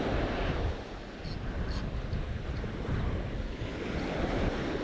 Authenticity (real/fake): real